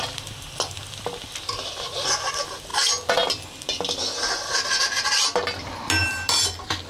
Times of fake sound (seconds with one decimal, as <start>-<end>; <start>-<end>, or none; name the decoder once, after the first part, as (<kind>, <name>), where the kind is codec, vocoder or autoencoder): none